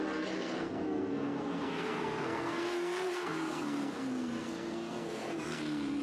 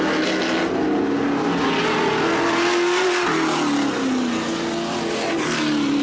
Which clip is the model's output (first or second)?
first